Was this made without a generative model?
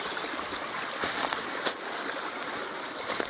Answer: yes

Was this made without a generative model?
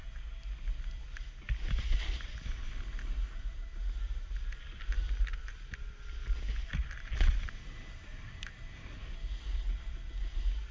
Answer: yes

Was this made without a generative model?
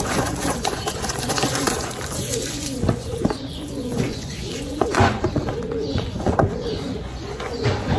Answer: no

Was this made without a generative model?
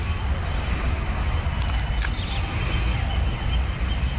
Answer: yes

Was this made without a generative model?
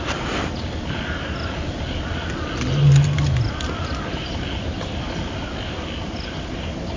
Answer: yes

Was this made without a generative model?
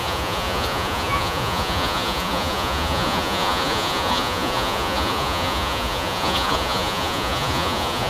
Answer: no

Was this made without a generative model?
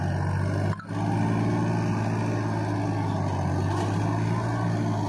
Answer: yes